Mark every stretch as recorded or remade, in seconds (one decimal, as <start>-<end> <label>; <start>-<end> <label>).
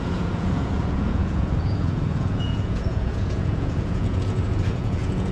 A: 0.0-5.3 remade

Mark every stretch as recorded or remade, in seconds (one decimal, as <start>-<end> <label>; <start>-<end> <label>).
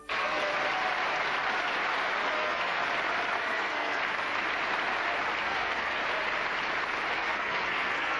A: 0.0-0.5 remade; 0.5-2.4 recorded; 2.4-2.8 remade; 2.8-3.4 recorded; 3.4-4.0 remade; 4.0-5.4 recorded; 5.4-6.0 remade; 6.0-7.1 recorded; 7.1-8.2 remade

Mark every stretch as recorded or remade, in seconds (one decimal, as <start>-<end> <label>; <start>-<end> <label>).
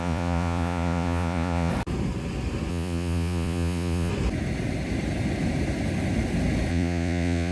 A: 0.0-1.7 remade; 1.7-2.7 recorded; 2.7-4.1 remade; 4.1-6.7 recorded; 6.7-7.5 remade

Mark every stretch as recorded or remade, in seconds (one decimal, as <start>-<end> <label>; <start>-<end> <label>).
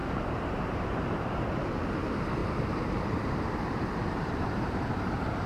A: 0.0-1.4 remade; 1.4-2.4 recorded; 2.4-3.2 remade; 3.2-4.0 recorded; 4.0-4.9 remade; 4.9-5.5 recorded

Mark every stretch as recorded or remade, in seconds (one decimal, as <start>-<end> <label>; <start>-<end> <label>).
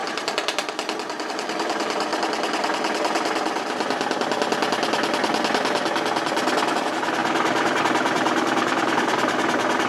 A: 0.0-1.3 recorded; 1.3-2.1 remade; 2.1-6.7 recorded; 6.7-9.9 remade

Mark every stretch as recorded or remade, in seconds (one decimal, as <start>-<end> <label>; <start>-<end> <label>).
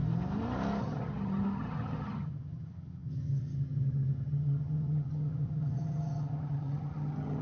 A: 0.0-0.8 recorded; 0.8-7.4 remade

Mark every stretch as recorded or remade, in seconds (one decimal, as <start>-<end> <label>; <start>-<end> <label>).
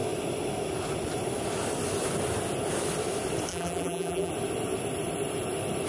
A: 0.0-3.5 recorded; 3.5-4.3 remade; 4.3-5.9 recorded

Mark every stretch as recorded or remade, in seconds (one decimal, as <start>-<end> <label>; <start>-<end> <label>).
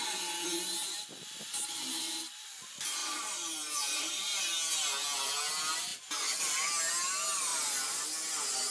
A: 0.0-3.0 recorded; 3.0-4.4 remade; 4.4-8.7 recorded